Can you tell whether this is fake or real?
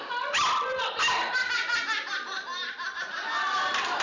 real